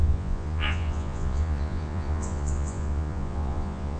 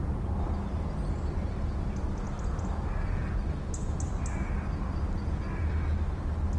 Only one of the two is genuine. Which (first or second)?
second